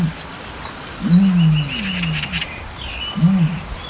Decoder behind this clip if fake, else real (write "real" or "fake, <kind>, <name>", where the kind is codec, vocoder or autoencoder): real